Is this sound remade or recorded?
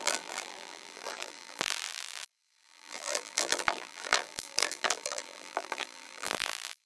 remade